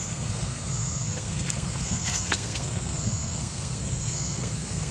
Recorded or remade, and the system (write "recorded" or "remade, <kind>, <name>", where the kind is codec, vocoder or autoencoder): remade, codec, SNAC